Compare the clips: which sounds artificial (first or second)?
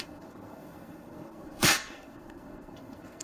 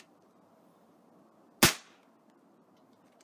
first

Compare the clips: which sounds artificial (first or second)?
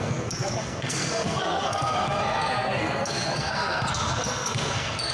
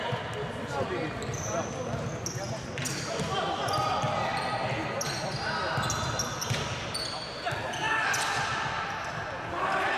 first